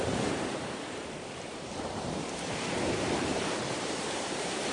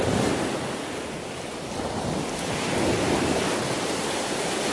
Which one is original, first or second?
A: second